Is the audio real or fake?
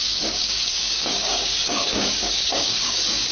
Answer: fake